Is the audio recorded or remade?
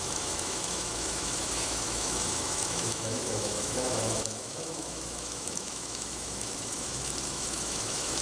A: remade